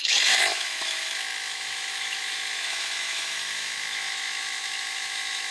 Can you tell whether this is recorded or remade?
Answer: remade